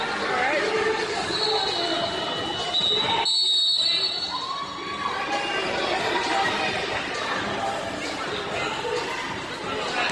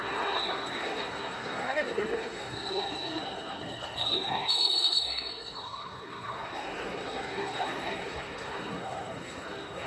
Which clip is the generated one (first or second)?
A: second